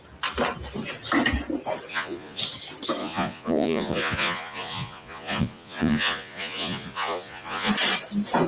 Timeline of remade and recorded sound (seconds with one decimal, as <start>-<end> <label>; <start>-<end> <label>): 0.0-1.9 recorded; 1.9-2.4 remade; 2.4-3.0 recorded; 3.0-7.7 remade; 7.7-8.5 recorded